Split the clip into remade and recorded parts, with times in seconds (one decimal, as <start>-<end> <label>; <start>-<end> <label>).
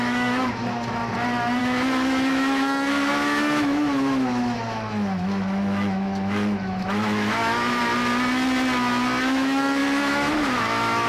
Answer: 0.0-1.0 remade; 1.0-1.6 recorded; 1.6-7.8 remade; 7.8-9.2 recorded; 9.2-11.1 remade